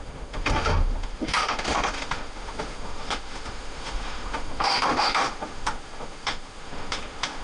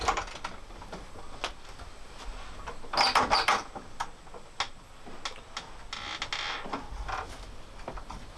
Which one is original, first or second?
second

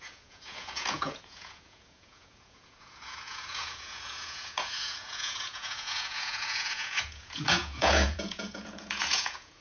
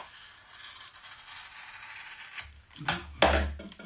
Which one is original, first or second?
second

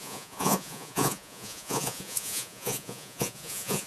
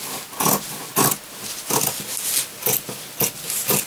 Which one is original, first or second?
second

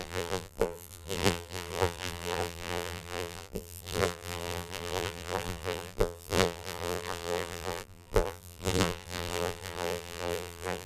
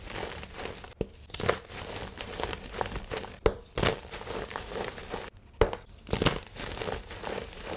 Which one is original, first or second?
second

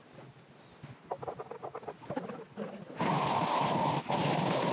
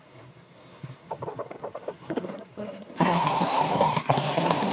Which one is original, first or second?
first